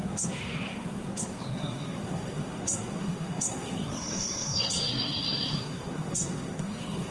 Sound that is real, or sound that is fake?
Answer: fake